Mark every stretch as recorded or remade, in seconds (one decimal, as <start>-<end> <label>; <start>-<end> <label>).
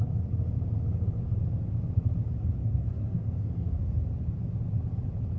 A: 0.0-2.6 recorded; 2.6-3.8 remade; 3.8-5.4 recorded